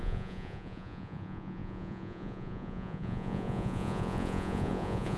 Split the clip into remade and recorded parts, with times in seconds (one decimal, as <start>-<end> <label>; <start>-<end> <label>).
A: 0.0-5.2 remade